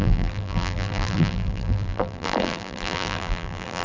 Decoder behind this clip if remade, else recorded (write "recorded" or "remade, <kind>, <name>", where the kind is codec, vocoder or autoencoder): remade, vocoder, BigVGAN v2